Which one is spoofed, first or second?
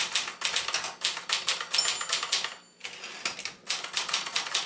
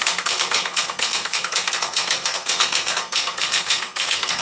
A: second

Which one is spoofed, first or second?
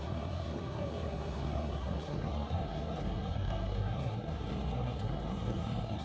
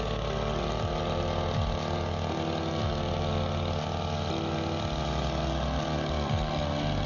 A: first